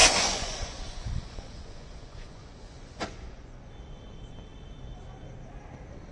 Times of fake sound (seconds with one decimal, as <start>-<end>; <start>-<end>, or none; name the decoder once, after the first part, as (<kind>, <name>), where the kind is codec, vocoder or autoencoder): 0.0-3.7 (vocoder, Vocos)